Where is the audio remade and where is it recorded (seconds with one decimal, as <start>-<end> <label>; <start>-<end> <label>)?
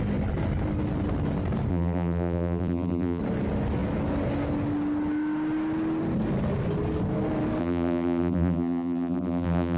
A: 0.0-1.7 recorded; 1.7-3.2 remade; 3.2-7.6 recorded; 7.6-9.8 remade